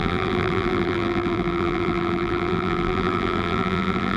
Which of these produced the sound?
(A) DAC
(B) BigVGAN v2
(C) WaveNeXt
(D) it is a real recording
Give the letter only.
B